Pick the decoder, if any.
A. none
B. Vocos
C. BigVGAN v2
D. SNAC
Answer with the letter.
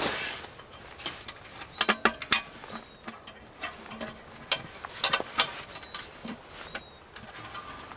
A